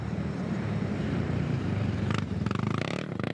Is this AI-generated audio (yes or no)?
yes